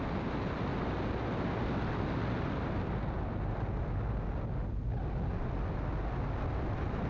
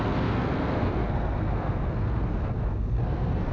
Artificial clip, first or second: second